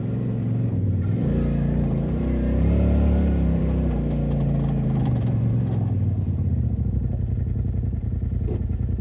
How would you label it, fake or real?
fake